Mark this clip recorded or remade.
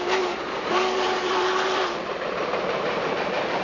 remade